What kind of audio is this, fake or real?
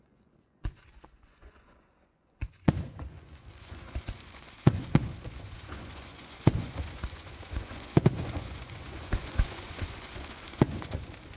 fake